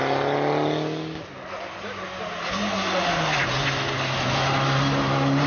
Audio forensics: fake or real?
real